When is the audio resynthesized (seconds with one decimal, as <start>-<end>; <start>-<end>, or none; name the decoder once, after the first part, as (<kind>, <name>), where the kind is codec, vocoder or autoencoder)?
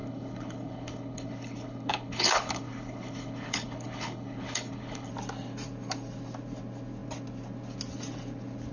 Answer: 0.0-5.1 (codec, HILCodec)